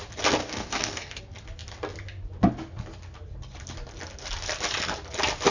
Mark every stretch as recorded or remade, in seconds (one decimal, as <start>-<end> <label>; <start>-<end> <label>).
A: 0.0-0.4 recorded; 0.4-1.2 remade; 1.2-5.5 recorded